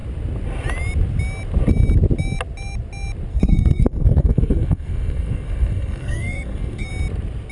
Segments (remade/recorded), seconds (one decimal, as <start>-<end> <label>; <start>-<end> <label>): 0.0-3.3 recorded; 3.3-6.9 remade; 6.9-7.5 recorded